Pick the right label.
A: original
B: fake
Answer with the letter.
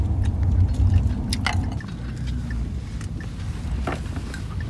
A